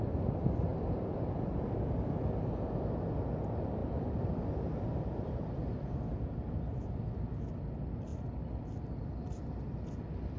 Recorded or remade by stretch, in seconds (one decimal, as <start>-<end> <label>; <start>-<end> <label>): 0.0-0.7 recorded; 0.7-2.6 remade; 2.6-3.8 recorded; 3.8-6.0 remade; 6.0-10.4 recorded

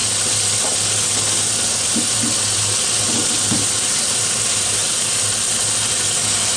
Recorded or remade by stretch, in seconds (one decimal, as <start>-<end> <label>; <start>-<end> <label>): 0.0-6.6 recorded